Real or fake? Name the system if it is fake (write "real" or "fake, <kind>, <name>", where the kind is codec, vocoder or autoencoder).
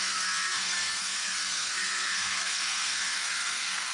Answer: fake, codec, SNAC